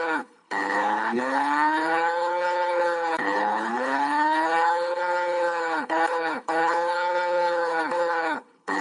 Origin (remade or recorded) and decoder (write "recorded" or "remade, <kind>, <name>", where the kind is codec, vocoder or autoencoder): remade, codec, HILCodec